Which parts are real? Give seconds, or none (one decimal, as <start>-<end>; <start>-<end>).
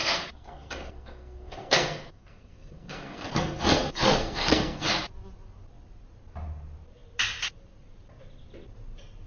4.9-9.3